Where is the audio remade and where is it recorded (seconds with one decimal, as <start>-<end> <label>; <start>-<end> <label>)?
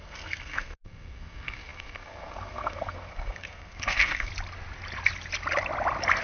0.0-4.3 remade; 4.3-6.2 recorded